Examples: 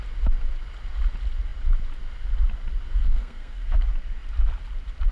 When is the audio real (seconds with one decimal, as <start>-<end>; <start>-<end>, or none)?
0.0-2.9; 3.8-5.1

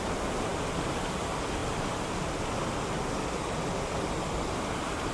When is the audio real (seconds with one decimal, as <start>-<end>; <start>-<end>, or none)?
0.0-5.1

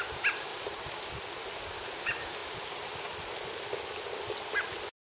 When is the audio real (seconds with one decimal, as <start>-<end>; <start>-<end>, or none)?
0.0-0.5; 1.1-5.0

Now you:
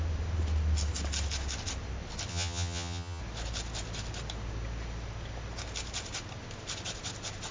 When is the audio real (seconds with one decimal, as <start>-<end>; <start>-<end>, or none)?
0.0-2.3; 3.2-7.5

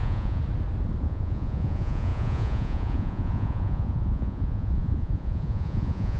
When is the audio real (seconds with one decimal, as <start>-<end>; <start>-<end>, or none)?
0.4-1.0

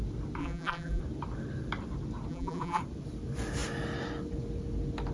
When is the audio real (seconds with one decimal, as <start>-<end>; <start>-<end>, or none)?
0.0-0.4; 1.0-2.3; 2.8-5.1

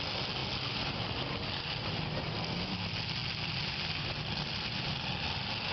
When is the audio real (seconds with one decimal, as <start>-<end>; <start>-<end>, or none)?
0.0-5.7

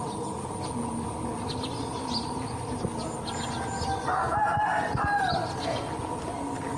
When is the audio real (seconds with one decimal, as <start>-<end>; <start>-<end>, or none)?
0.0-6.8